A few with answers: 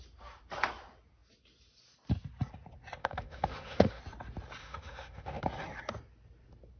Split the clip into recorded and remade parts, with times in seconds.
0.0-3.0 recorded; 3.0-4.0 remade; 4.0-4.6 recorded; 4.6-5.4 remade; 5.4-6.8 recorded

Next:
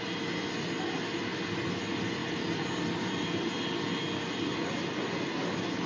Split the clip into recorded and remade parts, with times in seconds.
0.0-5.9 recorded

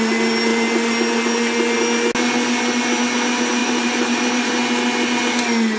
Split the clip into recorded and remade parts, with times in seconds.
0.0-3.6 recorded; 3.6-4.5 remade; 4.5-5.8 recorded

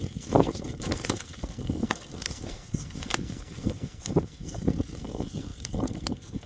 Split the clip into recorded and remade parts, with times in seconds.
0.0-6.5 remade

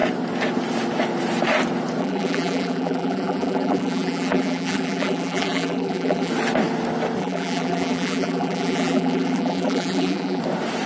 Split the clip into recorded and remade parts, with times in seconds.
0.0-2.0 recorded; 2.0-6.3 remade; 6.3-7.2 recorded; 7.2-10.4 remade; 10.4-10.9 recorded

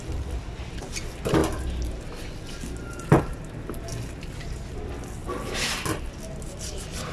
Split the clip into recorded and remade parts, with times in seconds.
0.0-7.1 recorded

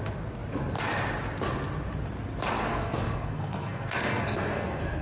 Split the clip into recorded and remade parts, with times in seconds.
0.0-2.6 recorded; 2.6-5.0 remade